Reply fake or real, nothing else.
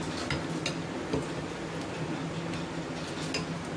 real